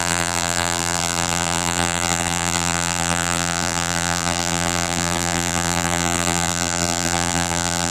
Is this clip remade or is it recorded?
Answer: remade